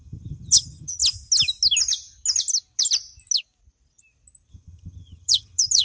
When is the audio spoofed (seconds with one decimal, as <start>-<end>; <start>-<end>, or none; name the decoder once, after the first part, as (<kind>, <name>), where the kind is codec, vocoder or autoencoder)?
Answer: 0.0-1.0 (vocoder, HiFi-GAN); 4.5-5.8